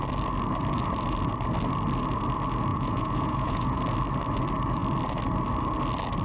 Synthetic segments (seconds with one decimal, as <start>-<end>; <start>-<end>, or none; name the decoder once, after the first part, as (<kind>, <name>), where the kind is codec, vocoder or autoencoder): 2.7-3.8 (vocoder, Vocos)